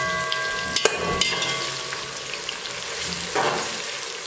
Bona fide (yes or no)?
yes